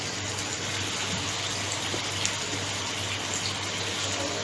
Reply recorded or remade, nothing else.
recorded